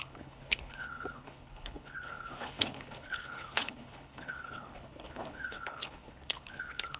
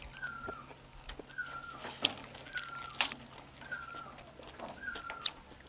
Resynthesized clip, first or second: first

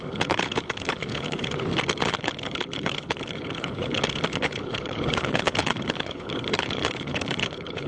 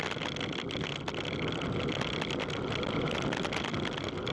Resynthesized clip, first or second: first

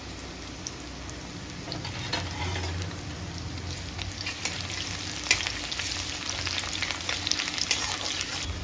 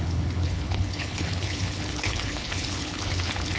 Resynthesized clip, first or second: second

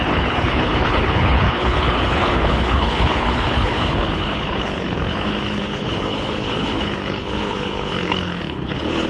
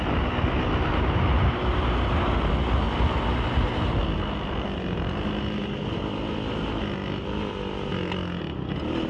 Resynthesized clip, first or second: first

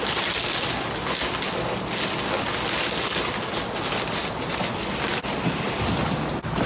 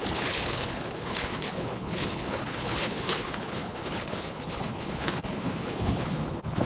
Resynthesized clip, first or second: second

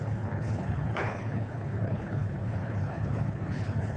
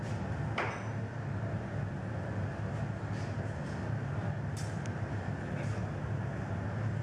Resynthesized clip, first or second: first